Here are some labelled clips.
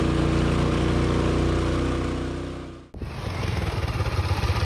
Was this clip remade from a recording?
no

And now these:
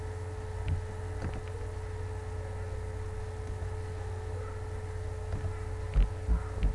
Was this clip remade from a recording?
no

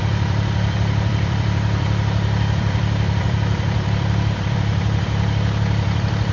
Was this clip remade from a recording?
yes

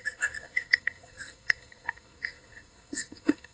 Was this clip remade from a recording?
yes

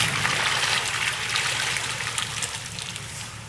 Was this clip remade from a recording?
no